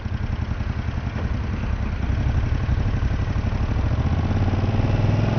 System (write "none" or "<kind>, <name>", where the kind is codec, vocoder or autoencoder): none